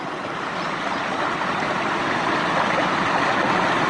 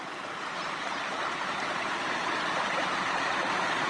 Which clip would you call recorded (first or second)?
first